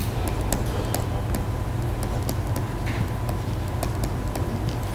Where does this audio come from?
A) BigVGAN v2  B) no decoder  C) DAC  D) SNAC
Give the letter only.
B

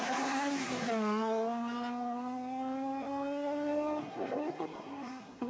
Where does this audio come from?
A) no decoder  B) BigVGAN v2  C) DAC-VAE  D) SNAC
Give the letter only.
D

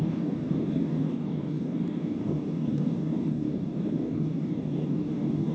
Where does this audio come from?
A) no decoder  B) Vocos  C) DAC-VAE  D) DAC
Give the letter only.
D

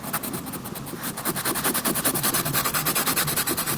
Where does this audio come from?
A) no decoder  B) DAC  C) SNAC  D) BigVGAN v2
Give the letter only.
A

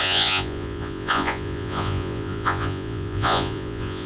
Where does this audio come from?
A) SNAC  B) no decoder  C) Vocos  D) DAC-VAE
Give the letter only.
C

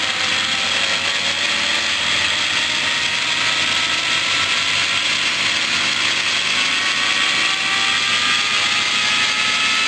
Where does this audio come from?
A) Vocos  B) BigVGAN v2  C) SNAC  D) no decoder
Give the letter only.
D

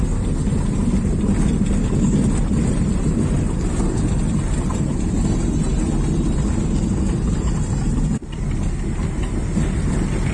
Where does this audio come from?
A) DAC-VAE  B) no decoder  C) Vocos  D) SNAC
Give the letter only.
B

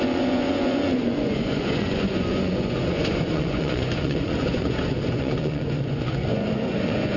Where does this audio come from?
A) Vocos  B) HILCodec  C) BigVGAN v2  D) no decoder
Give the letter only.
A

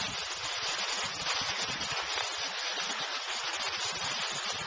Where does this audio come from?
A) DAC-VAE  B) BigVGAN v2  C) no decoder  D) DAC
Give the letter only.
C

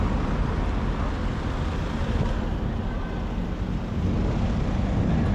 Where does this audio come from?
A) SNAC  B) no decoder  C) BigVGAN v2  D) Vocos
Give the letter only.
B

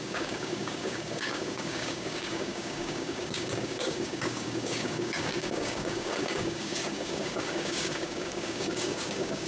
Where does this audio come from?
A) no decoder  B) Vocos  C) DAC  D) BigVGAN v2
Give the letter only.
C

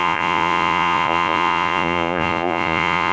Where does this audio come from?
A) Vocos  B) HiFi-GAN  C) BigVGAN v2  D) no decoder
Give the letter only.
A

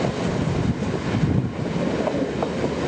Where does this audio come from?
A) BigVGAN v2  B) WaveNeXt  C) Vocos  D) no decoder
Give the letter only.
D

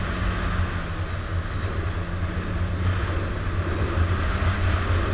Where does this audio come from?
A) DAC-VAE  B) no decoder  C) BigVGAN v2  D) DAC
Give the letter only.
B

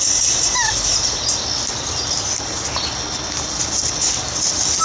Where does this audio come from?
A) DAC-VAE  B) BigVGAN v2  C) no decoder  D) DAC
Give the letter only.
C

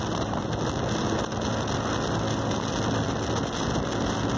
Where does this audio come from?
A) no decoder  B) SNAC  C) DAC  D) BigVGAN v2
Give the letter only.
A